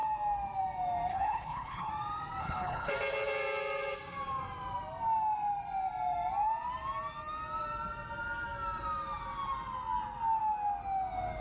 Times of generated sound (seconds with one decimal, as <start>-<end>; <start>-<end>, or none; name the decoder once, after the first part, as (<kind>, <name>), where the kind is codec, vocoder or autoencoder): 1.1-1.9 (codec, HILCodec); 2.4-2.9